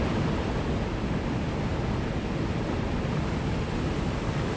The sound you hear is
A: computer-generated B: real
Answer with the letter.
B